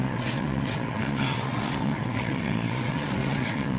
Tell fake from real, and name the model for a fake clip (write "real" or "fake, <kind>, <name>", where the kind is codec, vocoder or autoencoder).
fake, vocoder, WaveNeXt